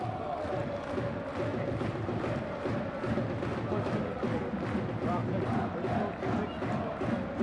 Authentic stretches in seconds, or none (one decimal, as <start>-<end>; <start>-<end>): 0.0-1.5; 2.9-7.4